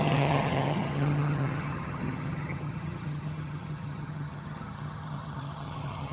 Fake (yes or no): yes